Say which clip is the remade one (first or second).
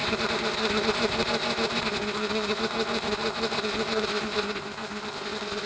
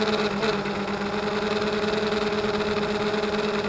first